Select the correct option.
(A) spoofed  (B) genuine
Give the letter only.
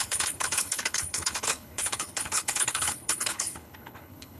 A